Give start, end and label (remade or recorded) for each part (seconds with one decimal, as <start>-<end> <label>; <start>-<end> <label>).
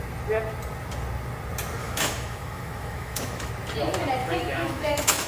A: 0.0-1.8 recorded; 1.8-3.5 remade; 3.5-4.2 recorded; 4.2-5.3 remade